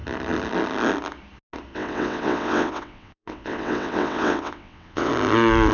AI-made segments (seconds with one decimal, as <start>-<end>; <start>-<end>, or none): 1.7-5.1